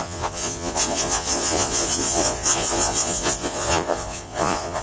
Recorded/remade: remade